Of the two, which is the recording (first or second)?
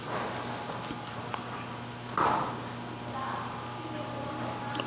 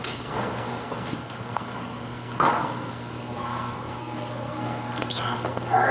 first